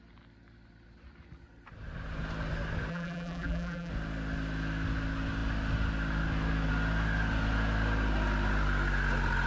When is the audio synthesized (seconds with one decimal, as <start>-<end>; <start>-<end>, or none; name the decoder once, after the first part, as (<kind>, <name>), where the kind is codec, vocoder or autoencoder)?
2.9-3.9 (vocoder, BigVGAN v2)